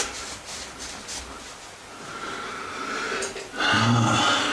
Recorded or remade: recorded